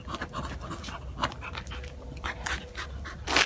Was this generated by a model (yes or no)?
no